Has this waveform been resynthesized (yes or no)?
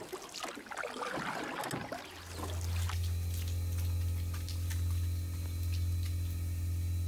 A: no